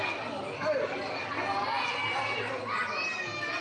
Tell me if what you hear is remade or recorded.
recorded